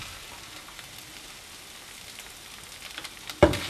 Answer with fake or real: real